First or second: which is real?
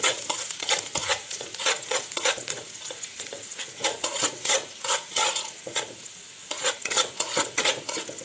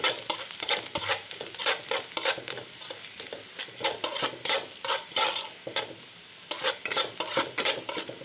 second